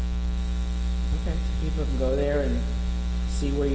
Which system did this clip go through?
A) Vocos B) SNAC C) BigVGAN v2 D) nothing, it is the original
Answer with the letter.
D